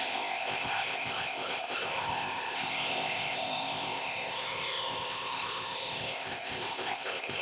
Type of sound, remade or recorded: remade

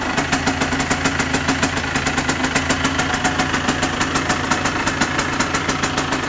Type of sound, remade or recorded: recorded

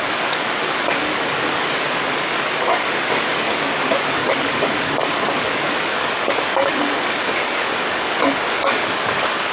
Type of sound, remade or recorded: remade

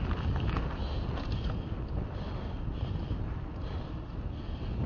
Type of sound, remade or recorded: recorded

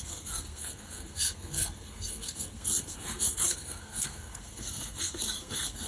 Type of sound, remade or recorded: remade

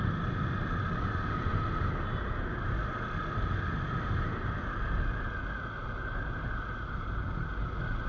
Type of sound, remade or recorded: recorded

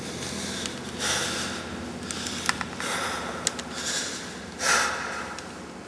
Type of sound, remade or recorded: recorded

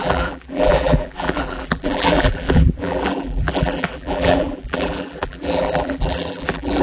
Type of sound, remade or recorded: remade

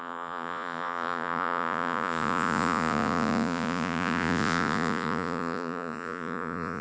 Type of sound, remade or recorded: remade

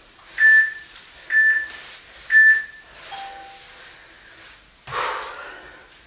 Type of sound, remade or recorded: recorded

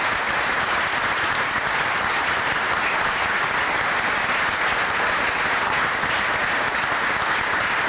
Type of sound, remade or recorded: recorded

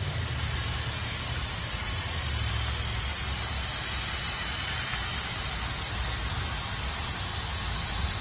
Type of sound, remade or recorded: recorded